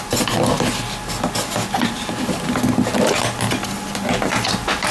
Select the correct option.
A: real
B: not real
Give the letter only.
A